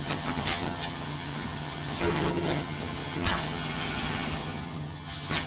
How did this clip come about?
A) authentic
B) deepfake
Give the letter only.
B